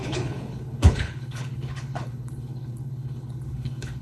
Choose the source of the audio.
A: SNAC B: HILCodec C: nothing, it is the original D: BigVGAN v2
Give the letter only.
B